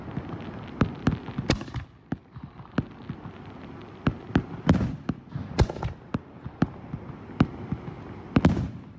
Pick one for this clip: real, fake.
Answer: real